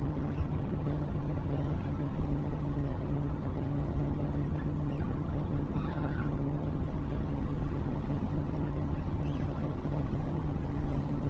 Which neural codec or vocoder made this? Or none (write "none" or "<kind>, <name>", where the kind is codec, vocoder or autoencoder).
vocoder, HiFi-GAN